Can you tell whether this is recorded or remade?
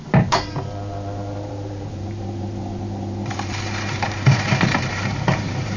remade